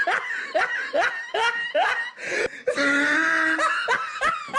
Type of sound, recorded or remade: recorded